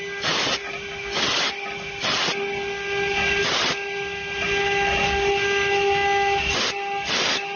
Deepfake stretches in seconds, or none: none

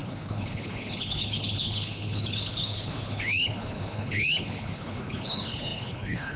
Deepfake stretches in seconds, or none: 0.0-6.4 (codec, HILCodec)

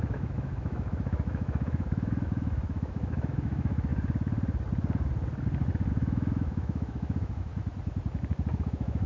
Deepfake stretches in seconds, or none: 0.0-3.9 (autoencoder, DAC-VAE); 5.9-7.5; 8.6-9.1

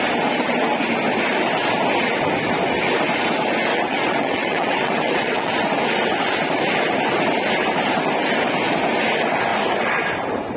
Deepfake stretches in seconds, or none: 3.7-5.5 (vocoder, WaveNeXt)

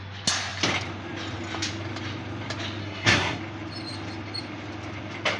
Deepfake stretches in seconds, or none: 2.8-3.4 (codec, SNAC)